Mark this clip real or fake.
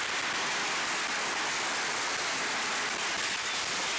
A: real